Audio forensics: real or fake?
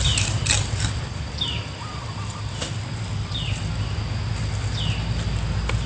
real